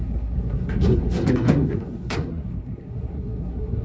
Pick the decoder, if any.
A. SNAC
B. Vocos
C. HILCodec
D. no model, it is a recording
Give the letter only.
A